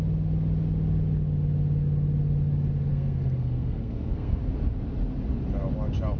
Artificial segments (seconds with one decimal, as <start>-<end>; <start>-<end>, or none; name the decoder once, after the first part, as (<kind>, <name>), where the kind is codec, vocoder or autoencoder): 2.9-4.4 (codec, SNAC)